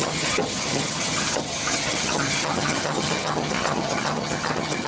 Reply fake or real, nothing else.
fake